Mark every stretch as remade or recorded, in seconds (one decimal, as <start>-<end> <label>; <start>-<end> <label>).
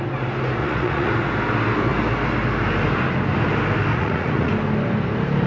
0.0-0.6 recorded; 0.6-1.1 remade; 1.1-3.9 recorded; 3.9-4.5 remade; 4.5-5.5 recorded